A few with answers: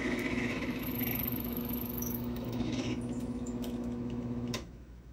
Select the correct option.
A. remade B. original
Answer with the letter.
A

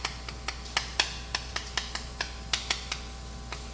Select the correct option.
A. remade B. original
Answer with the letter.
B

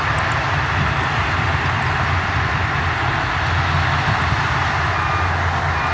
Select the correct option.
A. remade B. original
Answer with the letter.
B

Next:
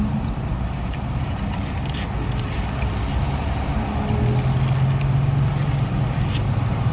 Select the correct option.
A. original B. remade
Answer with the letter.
A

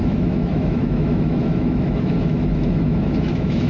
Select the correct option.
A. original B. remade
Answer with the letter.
B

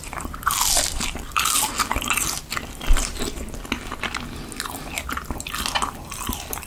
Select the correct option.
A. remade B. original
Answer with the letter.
B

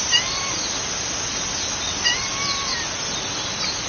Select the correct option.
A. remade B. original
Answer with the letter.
B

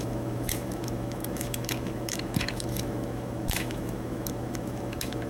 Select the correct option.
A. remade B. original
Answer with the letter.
A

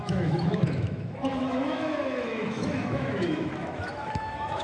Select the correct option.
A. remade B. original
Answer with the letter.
A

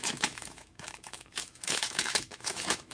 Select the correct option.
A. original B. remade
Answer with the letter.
B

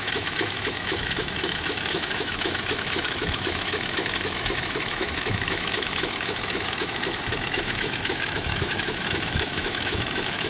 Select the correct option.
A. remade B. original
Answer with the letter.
A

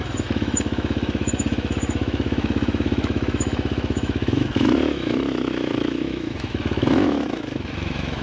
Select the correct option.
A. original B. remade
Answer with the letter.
B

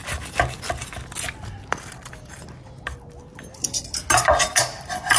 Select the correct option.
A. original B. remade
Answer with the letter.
A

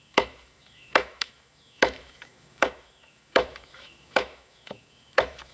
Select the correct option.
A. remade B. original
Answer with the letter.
A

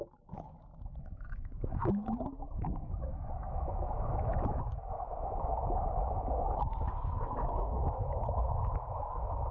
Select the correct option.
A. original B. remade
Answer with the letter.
B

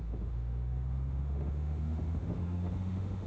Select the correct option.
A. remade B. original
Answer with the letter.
A